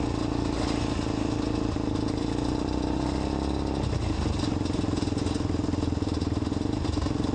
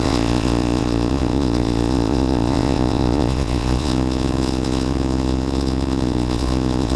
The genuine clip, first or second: first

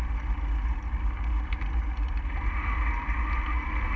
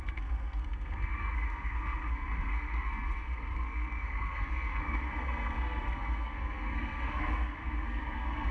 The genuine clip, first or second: first